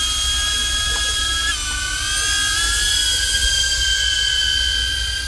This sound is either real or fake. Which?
real